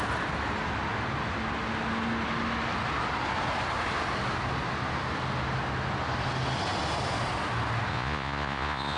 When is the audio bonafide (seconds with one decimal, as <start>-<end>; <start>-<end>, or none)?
0.0-7.9